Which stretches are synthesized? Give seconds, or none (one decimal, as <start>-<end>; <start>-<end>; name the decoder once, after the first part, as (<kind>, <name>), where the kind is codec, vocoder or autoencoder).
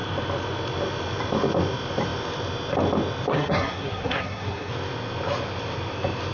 3.3-4.7 (codec, SNAC)